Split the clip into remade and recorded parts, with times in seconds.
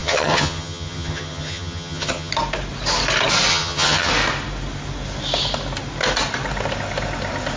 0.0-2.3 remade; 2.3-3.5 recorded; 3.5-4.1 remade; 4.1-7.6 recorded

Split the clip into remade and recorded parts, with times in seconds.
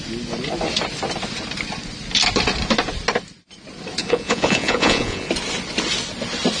0.0-4.0 recorded; 4.0-5.3 remade; 5.3-6.6 recorded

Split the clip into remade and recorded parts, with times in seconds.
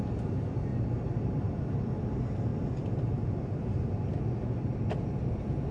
0.0-5.7 recorded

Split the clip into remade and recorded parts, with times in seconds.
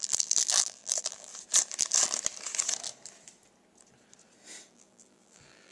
0.0-1.3 remade; 1.3-4.7 recorded; 4.7-5.7 remade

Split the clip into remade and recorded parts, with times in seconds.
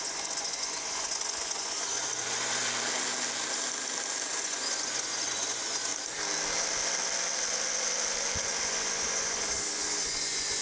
0.0-2.6 remade; 2.6-4.3 recorded; 4.3-5.9 remade; 5.9-8.6 recorded; 8.6-10.6 remade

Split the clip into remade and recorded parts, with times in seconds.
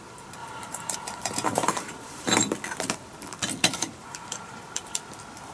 0.0-0.4 recorded; 0.4-2.4 remade; 2.4-3.7 recorded; 3.7-5.0 remade; 5.0-5.5 recorded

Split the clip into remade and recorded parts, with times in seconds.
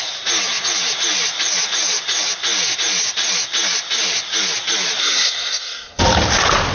0.0-5.0 recorded; 5.0-6.0 remade; 6.0-6.7 recorded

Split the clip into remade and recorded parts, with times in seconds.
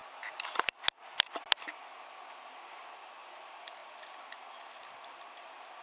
0.0-5.8 recorded